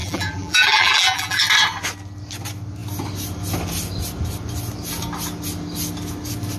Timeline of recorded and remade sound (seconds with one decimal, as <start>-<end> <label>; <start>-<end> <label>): 0.0-1.4 remade; 1.4-6.6 recorded